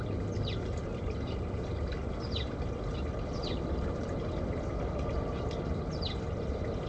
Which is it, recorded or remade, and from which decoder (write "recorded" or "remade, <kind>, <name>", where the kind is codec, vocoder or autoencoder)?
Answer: recorded